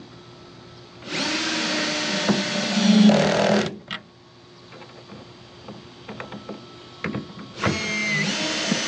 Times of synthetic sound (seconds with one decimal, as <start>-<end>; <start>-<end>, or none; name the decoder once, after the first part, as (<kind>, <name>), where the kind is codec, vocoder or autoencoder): none